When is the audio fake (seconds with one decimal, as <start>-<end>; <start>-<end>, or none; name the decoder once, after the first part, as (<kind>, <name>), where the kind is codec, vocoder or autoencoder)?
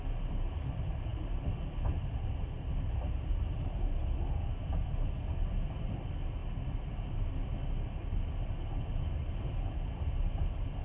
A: none